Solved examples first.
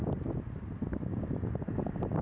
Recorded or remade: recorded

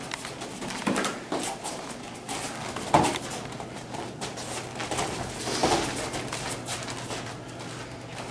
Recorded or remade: recorded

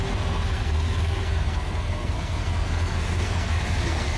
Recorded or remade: remade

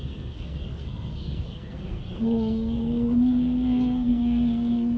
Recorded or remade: remade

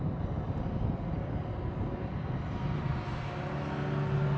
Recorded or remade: recorded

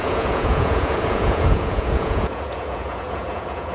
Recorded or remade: remade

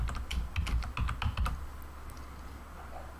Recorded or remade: recorded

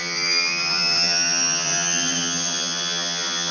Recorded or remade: remade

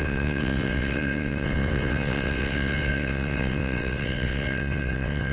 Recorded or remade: remade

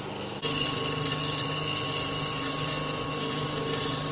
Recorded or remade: recorded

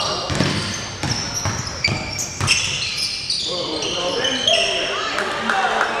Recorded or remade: recorded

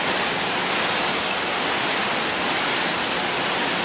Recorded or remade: recorded